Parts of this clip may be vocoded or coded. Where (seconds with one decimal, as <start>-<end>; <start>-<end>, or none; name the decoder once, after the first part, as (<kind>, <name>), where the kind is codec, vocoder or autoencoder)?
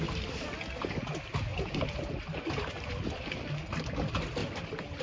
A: 1.5-3.3 (vocoder, BigVGAN v2)